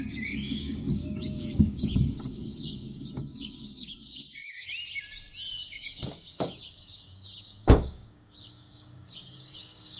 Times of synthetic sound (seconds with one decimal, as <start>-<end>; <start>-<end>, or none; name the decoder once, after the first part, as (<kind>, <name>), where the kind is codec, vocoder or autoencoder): 0.0-4.7 (codec, DAC); 5.5-10.0